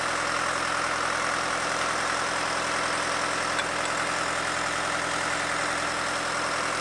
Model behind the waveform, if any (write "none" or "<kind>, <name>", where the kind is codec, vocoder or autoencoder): none